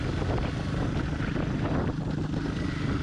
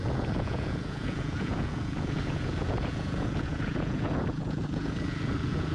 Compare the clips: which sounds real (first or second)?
first